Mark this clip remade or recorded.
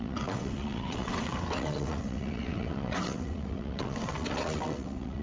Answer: remade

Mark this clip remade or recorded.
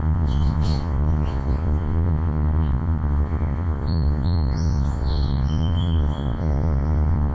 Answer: remade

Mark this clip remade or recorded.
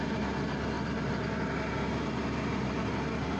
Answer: recorded